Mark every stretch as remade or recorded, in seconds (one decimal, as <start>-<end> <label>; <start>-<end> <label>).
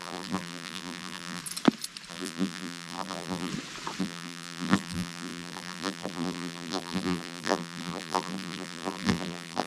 0.0-1.4 remade; 1.4-2.1 recorded; 2.1-3.5 remade; 3.5-4.0 recorded; 4.0-9.7 remade